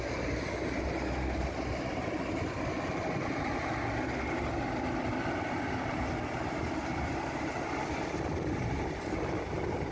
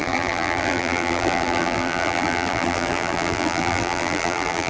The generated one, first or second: second